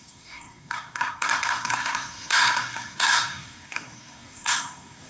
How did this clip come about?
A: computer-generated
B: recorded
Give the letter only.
A